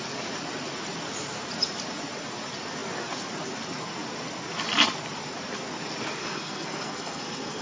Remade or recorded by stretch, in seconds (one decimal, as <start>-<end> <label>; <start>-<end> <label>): 0.0-6.2 recorded; 6.2-7.6 remade